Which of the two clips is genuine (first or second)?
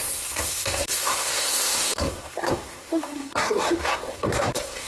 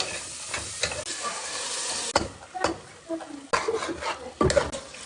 second